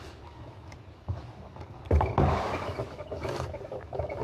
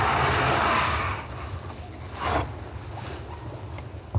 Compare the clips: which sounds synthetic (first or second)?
first